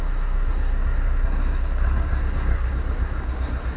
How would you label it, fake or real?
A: fake